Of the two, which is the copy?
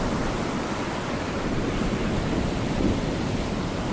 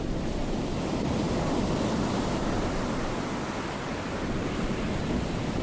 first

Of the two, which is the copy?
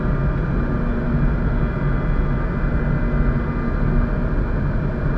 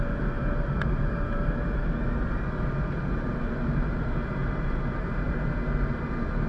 second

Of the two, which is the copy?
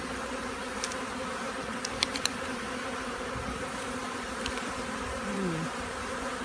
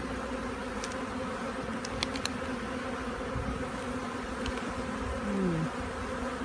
first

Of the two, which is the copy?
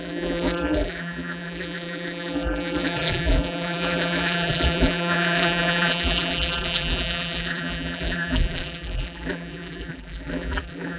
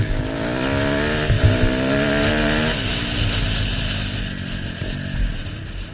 first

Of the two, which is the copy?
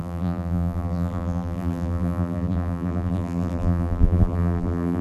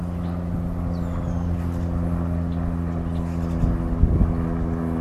first